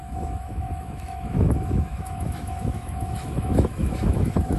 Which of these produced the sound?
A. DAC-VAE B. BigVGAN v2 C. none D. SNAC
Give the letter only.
A